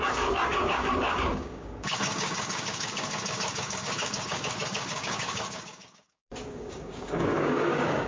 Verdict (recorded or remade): remade